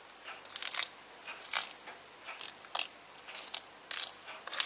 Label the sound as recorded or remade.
recorded